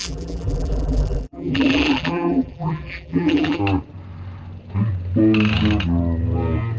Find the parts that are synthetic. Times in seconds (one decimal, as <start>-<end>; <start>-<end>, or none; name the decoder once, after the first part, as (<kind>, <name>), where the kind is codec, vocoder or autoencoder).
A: 0.0-3.6 (vocoder, BigVGAN v2)